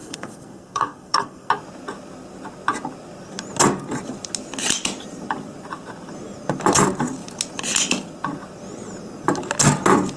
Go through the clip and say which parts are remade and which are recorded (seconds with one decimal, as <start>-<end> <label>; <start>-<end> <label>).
0.0-1.5 remade; 1.5-10.2 recorded